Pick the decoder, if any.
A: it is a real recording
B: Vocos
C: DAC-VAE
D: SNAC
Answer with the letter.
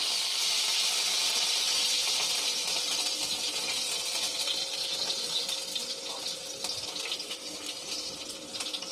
A